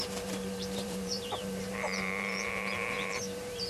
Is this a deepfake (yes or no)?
yes